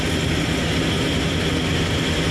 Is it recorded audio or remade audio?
recorded